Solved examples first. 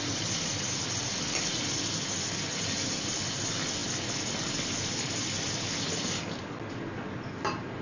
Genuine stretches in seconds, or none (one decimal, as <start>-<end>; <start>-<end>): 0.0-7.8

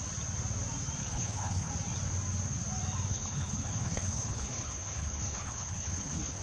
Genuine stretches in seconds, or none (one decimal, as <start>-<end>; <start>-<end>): 0.0-1.0; 1.7-3.1

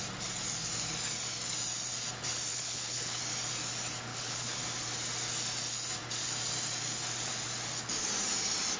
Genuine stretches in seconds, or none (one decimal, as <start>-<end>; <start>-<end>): 0.0-2.5; 3.2-4.1; 4.6-8.8